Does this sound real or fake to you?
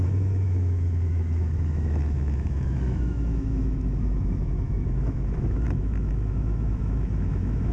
fake